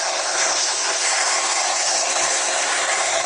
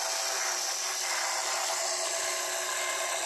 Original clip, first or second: second